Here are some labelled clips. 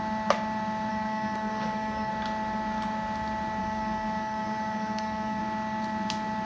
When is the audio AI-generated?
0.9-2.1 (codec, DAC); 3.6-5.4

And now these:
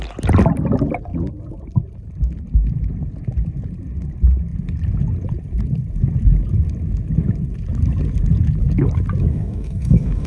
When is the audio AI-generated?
9.3-10.3 (codec, DAC)

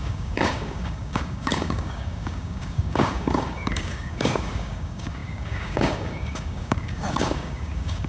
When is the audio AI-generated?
0.0-8.1 (codec, DAC)

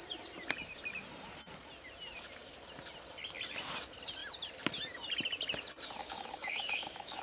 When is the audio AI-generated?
6.0-7.2 (codec, DAC)

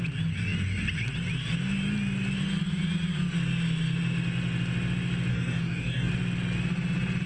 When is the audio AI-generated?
5.3-6.1 (codec, DAC)

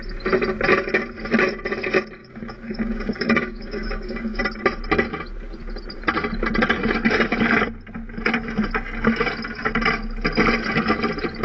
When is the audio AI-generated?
2.2-4.4 (codec, DAC)